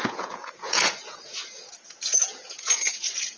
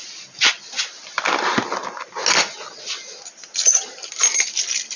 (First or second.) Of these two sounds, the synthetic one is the first